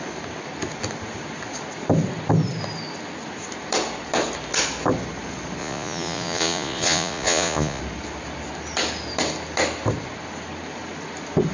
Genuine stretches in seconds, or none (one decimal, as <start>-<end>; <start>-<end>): 0.0-5.6; 7.8-11.5